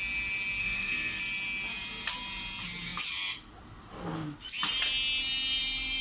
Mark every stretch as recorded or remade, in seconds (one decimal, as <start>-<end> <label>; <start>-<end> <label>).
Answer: 0.0-0.6 recorded; 0.6-1.2 remade; 1.2-6.0 recorded